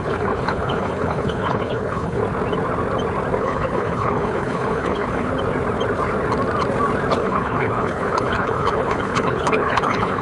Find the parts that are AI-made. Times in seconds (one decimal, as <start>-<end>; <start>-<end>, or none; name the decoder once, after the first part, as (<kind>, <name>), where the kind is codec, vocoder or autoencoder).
0.0-2.2 (codec, HILCodec); 3.4-5.3; 7.1-10.2